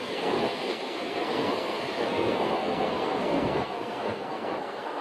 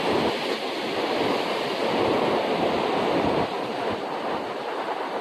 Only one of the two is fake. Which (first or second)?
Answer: first